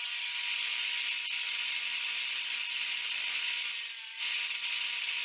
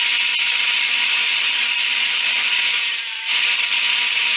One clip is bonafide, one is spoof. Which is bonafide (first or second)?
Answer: first